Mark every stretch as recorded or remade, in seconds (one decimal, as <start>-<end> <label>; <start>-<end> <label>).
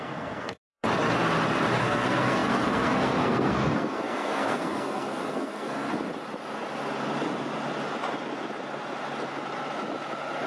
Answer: 0.0-0.9 remade; 0.9-1.8 recorded; 1.8-5.9 remade; 5.9-10.5 recorded